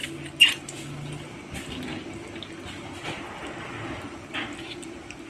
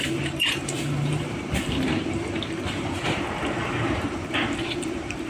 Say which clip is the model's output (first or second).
second